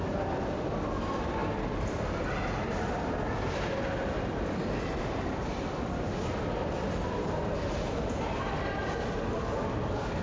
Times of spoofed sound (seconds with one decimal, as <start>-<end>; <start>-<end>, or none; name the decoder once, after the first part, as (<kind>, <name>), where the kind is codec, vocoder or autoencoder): none